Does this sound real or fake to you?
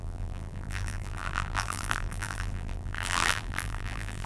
fake